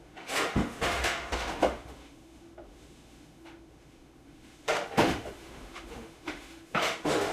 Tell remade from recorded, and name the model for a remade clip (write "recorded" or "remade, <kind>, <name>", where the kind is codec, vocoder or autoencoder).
remade, autoencoder, DAC-VAE